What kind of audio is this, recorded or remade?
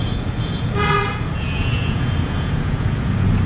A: remade